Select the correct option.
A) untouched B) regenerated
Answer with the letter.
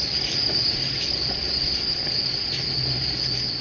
A